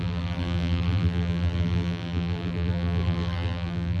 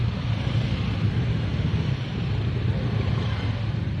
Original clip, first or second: second